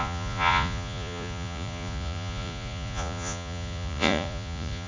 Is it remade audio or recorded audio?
remade